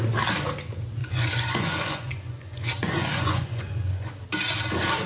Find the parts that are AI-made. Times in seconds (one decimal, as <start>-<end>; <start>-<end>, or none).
1.0-4.1